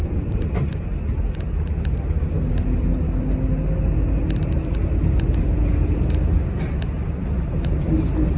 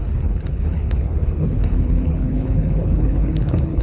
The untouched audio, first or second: first